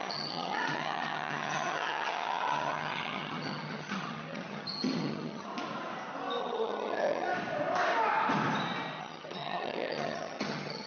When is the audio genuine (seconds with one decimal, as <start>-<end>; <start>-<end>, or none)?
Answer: 5.5-6.4; 7.3-9.0